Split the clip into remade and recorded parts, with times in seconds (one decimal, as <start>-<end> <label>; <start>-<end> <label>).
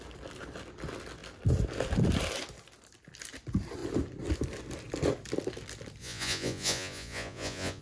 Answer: 0.0-6.0 recorded; 6.0-7.8 remade